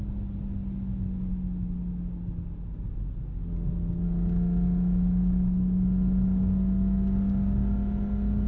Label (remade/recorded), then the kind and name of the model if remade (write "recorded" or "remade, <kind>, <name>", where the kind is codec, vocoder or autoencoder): recorded